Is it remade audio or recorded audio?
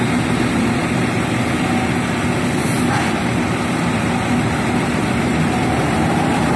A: recorded